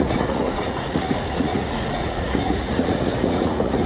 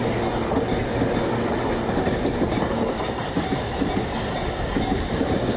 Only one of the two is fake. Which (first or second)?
first